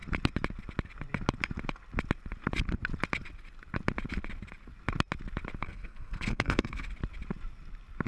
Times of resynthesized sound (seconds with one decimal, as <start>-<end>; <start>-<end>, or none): 5.6-6.9

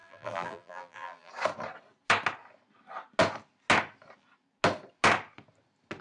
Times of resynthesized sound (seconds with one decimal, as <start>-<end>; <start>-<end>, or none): 0.0-1.3

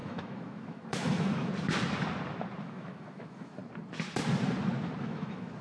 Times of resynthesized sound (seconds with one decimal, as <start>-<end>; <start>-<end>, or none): 0.0-1.5; 2.6-3.6; 5.0-5.6